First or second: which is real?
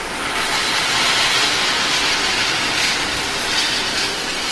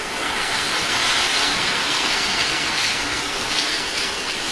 first